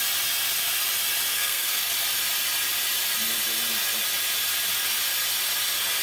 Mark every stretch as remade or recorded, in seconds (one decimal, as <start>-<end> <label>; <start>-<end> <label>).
0.0-1.3 recorded; 1.3-1.9 remade; 1.9-6.0 recorded